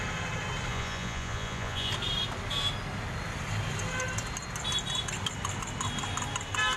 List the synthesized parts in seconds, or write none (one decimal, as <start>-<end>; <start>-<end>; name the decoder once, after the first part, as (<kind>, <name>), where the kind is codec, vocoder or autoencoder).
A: 0.7-1.9 (vocoder, Vocos)